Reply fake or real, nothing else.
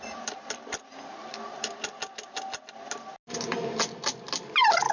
real